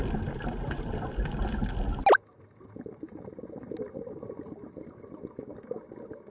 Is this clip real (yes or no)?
yes